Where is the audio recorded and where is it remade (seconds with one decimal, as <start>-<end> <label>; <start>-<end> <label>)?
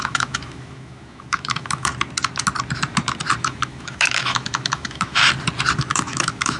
0.0-1.9 remade; 1.9-3.4 recorded; 3.4-5.2 remade; 5.2-5.8 recorded; 5.8-6.6 remade